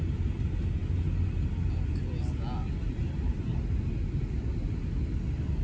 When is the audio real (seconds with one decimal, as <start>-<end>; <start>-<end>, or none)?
0.0-5.6